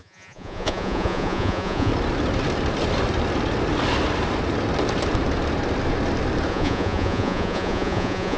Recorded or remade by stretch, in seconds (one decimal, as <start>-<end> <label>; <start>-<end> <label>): 0.0-1.9 remade; 1.9-6.5 recorded; 6.5-8.4 remade